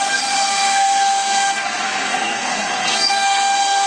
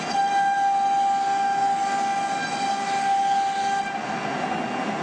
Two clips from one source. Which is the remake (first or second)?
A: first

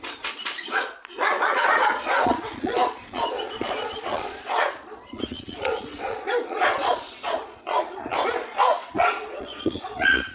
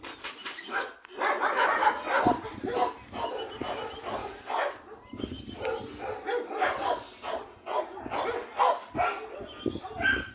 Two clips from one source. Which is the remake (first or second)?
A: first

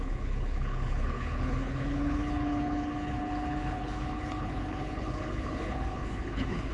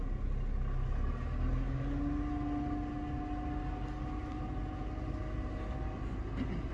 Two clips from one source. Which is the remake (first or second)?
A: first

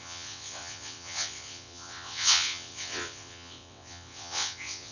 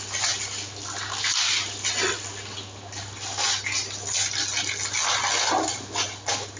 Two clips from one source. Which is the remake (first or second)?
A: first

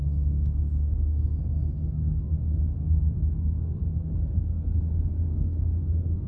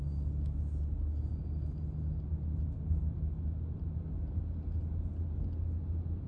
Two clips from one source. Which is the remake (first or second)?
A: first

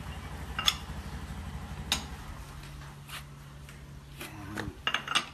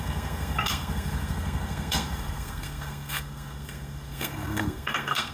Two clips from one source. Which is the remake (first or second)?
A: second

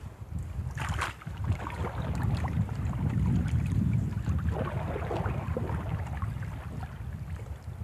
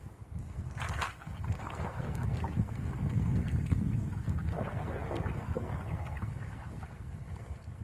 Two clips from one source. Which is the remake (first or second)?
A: second